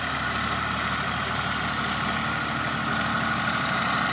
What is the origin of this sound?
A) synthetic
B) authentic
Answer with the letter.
B